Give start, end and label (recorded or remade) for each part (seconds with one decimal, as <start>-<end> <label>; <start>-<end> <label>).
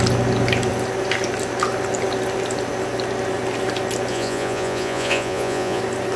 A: 0.0-4.1 recorded; 4.1-5.8 remade; 5.8-6.2 recorded